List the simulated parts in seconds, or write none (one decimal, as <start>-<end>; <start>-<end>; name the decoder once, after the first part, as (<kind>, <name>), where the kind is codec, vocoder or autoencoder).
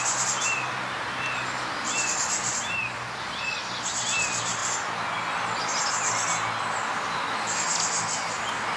none